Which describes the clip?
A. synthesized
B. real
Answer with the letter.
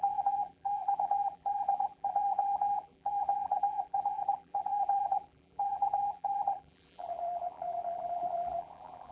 A